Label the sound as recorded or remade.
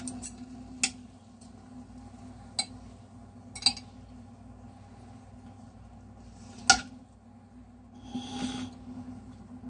recorded